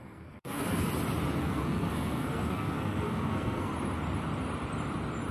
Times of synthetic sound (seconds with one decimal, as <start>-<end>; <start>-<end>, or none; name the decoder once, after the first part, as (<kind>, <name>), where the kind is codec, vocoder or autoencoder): 0.0-0.9 (codec, SNAC); 1.4-3.7